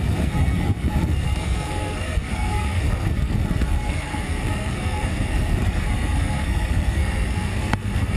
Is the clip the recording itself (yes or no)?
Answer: no